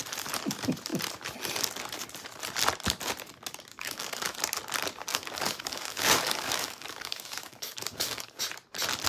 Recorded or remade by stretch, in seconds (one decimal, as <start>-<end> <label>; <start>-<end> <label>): 0.0-3.7 recorded; 3.7-4.4 remade; 4.4-5.1 recorded; 5.1-8.4 remade; 8.4-9.1 recorded

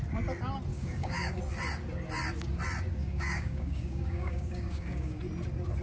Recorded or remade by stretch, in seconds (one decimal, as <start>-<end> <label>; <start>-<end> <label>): 0.0-0.7 recorded; 0.7-1.4 remade; 1.4-3.0 recorded; 3.0-5.2 remade; 5.2-5.8 recorded

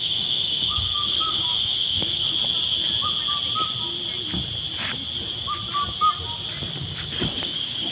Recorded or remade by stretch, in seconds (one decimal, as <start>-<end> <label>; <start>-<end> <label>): 0.0-2.4 remade; 2.4-6.8 recorded; 6.8-7.9 remade

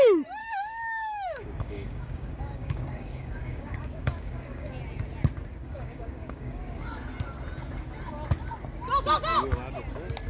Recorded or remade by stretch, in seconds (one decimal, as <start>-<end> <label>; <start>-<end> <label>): 0.0-0.4 recorded; 0.4-4.7 remade; 4.7-5.6 recorded; 5.6-6.6 remade; 6.6-10.3 recorded

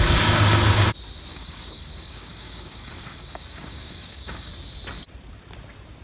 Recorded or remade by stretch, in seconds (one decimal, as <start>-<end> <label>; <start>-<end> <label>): 0.0-1.3 recorded; 1.3-4.5 remade; 4.5-6.0 recorded

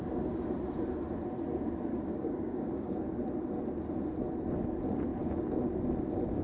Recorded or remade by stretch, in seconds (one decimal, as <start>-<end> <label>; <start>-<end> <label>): 0.0-1.9 recorded; 1.9-3.2 remade; 3.2-6.4 recorded

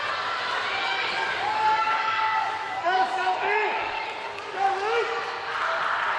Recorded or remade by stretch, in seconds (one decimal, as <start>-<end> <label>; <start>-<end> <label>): 0.0-0.8 recorded; 0.8-4.5 remade; 4.5-6.2 recorded

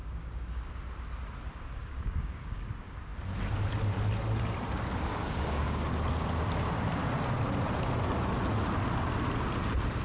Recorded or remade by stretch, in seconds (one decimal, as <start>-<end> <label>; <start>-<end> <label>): 0.0-0.7 remade; 0.7-1.8 recorded; 1.8-2.7 remade; 2.7-5.1 recorded; 5.1-5.9 remade; 5.9-10.0 recorded